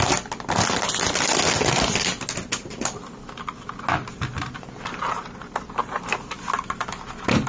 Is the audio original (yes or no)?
yes